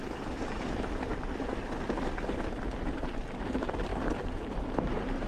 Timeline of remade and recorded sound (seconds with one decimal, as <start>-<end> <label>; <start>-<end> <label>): 0.0-1.6 remade; 1.6-2.8 recorded; 2.8-5.3 remade